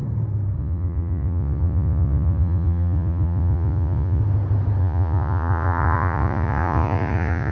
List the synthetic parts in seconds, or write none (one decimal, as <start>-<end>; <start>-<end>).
0.6-4.2; 4.8-7.5